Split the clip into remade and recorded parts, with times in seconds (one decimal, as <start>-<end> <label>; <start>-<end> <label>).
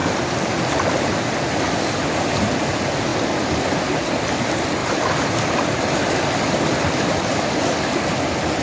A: 0.0-4.8 recorded; 4.8-7.6 remade; 7.6-8.6 recorded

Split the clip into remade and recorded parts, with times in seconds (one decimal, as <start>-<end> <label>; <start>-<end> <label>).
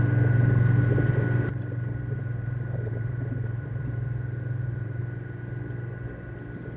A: 0.0-1.5 recorded; 1.5-5.0 remade; 5.0-6.8 recorded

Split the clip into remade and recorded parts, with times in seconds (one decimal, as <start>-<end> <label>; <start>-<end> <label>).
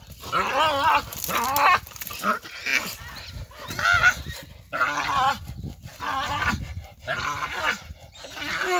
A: 0.0-8.8 recorded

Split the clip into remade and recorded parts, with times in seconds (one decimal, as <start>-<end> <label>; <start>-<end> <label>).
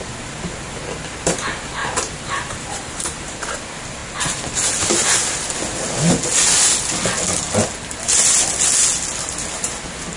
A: 0.0-1.8 recorded; 1.8-3.5 remade; 3.5-10.2 recorded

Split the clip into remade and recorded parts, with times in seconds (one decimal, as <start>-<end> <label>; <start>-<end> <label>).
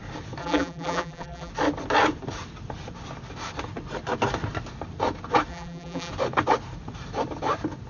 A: 0.0-0.4 recorded; 0.4-1.5 remade; 1.5-5.5 recorded; 5.5-6.1 remade; 6.1-7.9 recorded